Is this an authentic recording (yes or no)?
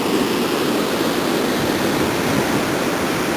yes